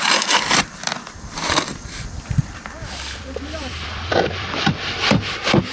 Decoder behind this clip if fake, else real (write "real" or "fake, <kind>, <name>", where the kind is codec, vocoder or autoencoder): fake, vocoder, BigVGAN v2